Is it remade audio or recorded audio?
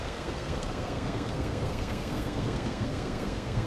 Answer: remade